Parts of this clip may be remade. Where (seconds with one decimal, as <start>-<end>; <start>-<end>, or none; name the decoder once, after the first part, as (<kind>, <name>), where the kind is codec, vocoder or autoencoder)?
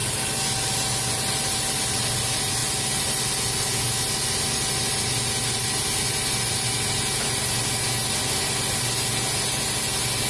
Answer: none